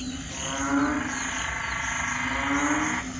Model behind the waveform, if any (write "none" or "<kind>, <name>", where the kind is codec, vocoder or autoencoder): none